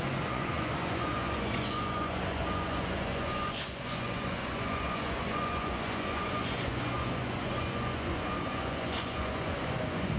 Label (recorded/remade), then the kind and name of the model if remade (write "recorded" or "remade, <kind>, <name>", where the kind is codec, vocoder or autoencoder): remade, vocoder, Vocos